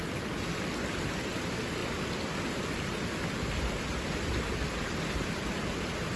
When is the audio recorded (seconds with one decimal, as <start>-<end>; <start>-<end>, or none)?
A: 0.0-6.2